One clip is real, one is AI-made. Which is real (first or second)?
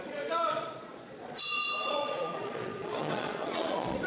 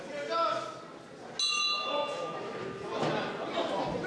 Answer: second